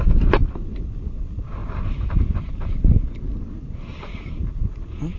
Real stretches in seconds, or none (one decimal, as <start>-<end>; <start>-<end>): 0.0-1.6; 4.7-5.2